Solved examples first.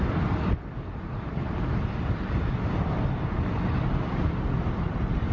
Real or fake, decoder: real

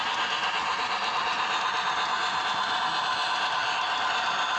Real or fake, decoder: real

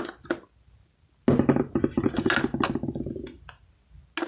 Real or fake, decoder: real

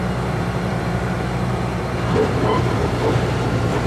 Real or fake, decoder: fake, vocoder, BigVGAN v2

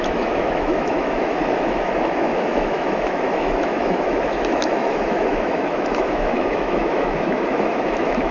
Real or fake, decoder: fake, autoencoder, DAC-VAE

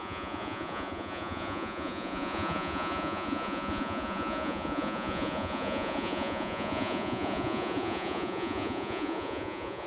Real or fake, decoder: fake, vocoder, Vocos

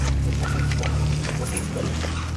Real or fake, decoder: real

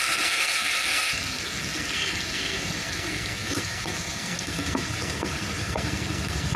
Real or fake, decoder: fake, codec, SNAC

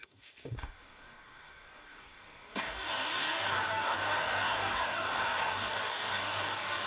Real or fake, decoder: fake, codec, DAC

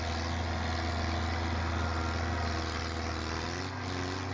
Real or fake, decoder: real